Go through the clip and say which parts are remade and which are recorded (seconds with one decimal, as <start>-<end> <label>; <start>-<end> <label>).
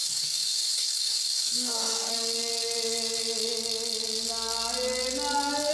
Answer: 0.0-2.1 remade; 2.1-5.7 recorded